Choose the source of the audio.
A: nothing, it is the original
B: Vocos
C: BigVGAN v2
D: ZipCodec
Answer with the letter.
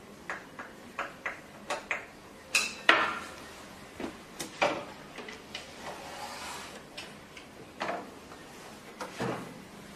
C